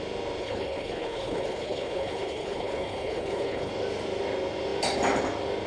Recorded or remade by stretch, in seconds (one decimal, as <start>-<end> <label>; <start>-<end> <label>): 0.0-0.4 recorded; 0.4-3.7 remade; 3.7-5.7 recorded